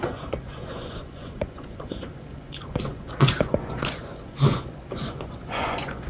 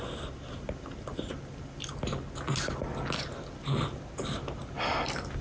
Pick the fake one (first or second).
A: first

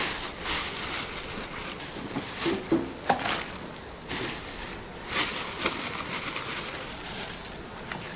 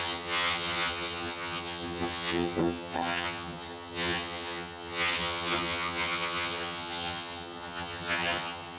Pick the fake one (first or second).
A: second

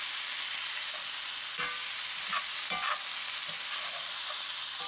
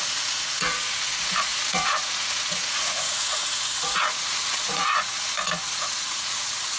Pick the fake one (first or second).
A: second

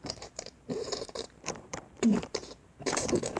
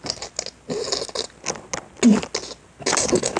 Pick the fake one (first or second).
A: first